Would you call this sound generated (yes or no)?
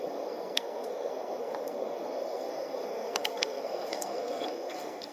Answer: yes